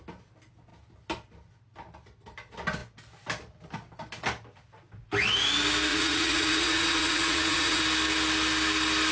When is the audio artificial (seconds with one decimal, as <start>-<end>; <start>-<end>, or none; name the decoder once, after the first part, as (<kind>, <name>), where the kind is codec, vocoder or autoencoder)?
5.9-7.8 (vocoder, Vocos)